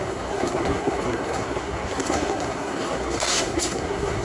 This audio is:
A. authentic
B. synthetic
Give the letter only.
B